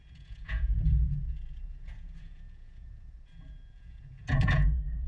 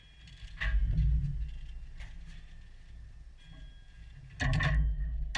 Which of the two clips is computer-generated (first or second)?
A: first